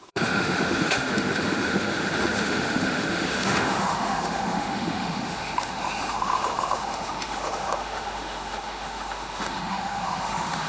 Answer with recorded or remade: remade